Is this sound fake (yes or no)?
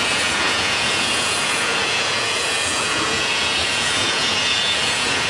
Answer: yes